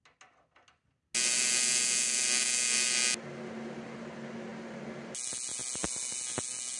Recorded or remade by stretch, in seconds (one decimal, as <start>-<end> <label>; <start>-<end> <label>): 0.0-6.8 recorded